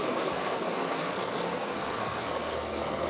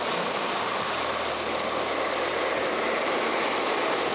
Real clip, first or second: second